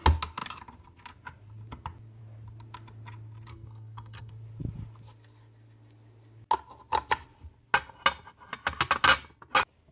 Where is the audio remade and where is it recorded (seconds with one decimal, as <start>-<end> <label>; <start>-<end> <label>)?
0.0-3.5 recorded; 3.5-4.3 remade; 4.3-9.9 recorded